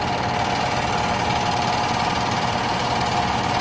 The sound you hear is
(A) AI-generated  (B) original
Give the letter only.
B